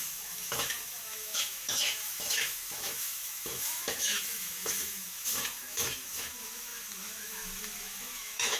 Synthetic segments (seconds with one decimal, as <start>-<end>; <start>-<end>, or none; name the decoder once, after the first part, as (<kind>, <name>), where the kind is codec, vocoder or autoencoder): 0.0-8.6 (autoencoder, DAC-VAE)